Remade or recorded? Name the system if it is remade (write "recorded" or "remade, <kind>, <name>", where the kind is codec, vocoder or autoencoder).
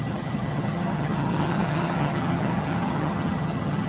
remade, vocoder, HiFi-GAN